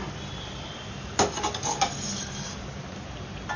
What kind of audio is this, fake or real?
real